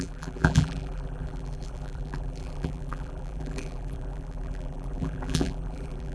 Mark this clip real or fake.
fake